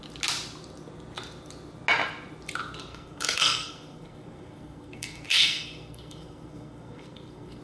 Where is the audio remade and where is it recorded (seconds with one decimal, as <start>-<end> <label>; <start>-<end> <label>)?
0.0-2.9 recorded; 2.9-7.6 remade